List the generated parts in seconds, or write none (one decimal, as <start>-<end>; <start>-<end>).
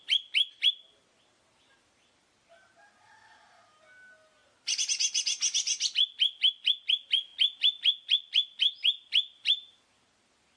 none